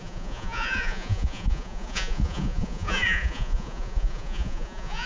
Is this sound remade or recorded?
remade